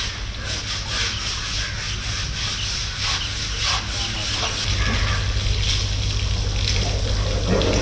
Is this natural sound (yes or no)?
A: yes